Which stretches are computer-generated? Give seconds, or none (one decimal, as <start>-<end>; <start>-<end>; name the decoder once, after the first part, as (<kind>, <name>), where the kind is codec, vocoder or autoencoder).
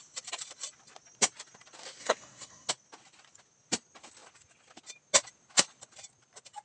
2.0-2.7 (codec, SNAC)